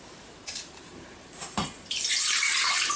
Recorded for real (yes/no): no